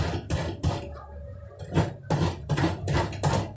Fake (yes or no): no